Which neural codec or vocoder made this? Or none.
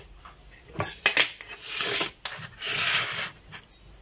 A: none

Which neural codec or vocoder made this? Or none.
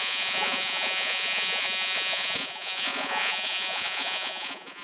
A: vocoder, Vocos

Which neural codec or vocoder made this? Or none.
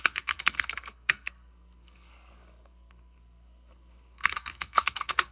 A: codec, SNAC